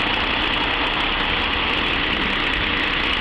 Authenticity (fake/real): real